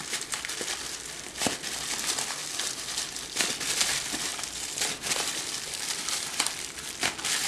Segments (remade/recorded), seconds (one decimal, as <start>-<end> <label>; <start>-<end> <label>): 0.0-2.4 remade; 2.4-3.2 recorded; 3.2-7.5 remade